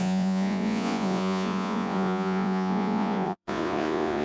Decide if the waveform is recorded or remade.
remade